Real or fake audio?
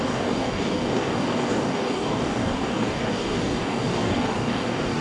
fake